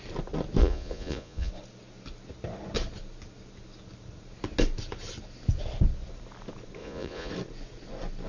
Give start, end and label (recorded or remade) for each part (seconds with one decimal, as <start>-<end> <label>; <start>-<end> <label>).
0.0-0.6 recorded; 0.6-1.5 remade; 1.5-6.8 recorded; 6.8-7.3 remade; 7.3-8.3 recorded